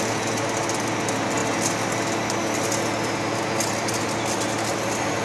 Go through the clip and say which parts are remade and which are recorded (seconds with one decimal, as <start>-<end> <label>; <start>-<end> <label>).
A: 0.0-5.2 recorded